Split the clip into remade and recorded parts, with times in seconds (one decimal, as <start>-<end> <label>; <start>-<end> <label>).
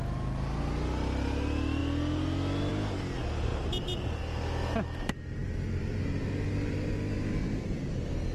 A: 0.0-5.4 recorded; 5.4-6.9 remade; 6.9-8.3 recorded